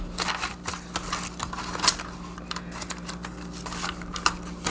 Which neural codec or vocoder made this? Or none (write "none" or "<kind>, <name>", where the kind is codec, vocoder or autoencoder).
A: none